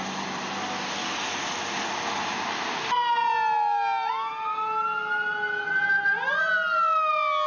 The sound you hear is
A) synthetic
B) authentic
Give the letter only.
B